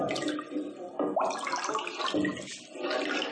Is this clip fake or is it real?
real